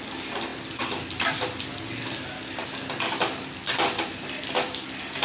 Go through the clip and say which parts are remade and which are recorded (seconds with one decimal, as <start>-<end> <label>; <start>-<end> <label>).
0.0-5.2 recorded